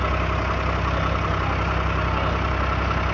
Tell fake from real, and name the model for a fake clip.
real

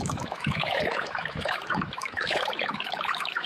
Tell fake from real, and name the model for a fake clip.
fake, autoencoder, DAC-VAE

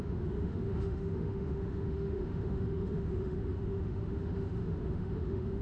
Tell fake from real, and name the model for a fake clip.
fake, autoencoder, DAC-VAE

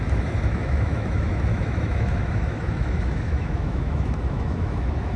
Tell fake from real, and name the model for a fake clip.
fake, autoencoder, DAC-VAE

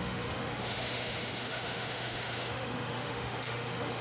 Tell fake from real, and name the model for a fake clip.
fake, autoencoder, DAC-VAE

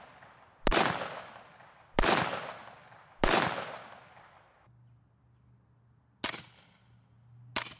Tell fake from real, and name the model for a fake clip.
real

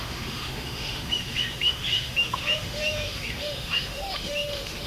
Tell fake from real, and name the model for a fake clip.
fake, autoencoder, DAC-VAE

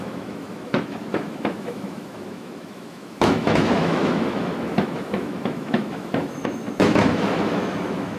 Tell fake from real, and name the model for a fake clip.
fake, autoencoder, DAC-VAE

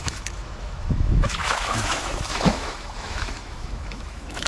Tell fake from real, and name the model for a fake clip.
fake, autoencoder, DAC-VAE